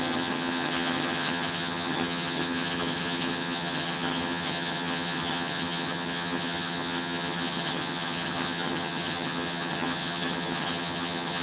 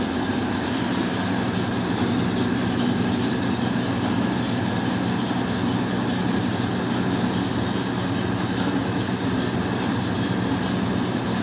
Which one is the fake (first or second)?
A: first